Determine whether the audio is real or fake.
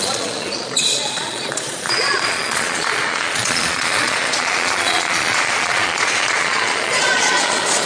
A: fake